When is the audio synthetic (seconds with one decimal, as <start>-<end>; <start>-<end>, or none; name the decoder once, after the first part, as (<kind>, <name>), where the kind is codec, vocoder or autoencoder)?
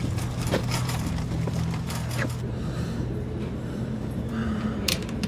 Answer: 0.0-5.3 (vocoder, BigVGAN v2)